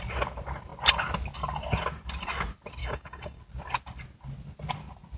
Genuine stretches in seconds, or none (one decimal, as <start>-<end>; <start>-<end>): 0.0-2.8; 3.4-5.2

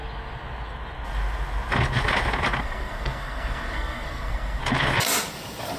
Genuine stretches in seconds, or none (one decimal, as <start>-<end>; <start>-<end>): 0.0-2.6; 4.6-5.8

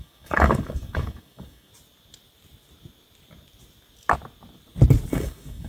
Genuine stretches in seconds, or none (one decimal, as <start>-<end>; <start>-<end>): 1.7-5.1

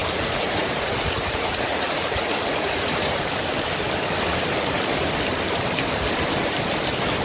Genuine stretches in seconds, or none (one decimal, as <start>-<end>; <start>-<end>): 3.4-7.2

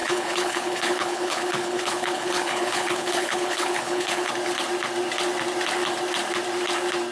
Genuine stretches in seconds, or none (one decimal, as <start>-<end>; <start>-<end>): 4.3-7.1

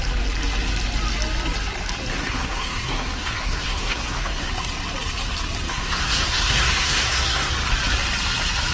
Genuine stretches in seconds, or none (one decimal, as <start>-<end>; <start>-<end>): 0.0-2.1; 4.5-5.7; 7.5-8.7